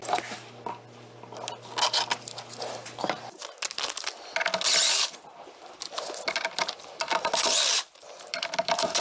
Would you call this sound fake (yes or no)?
no